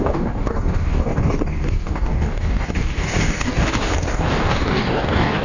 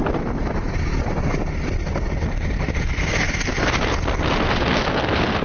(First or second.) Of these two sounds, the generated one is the first